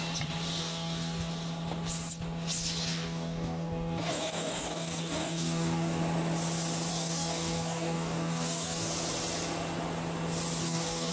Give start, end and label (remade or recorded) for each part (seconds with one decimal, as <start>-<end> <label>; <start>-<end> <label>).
0.0-0.6 recorded; 0.6-1.3 remade; 1.3-2.8 recorded; 2.8-6.0 remade; 6.0-6.9 recorded; 6.9-8.9 remade; 8.9-10.6 recorded; 10.6-11.1 remade